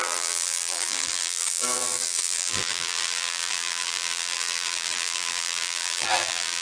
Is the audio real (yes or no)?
no